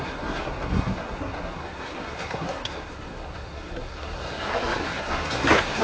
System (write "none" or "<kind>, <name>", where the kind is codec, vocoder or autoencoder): codec, SNAC